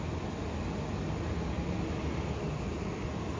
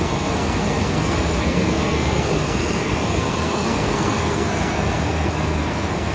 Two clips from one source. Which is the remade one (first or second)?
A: second